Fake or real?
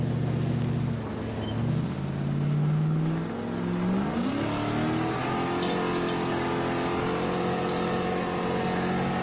real